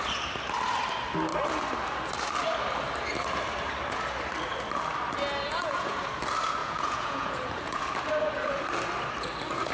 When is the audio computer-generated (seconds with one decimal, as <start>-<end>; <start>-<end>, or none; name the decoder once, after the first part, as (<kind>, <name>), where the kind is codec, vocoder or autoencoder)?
5.5-6.0 (vocoder, Vocos); 6.6-7.8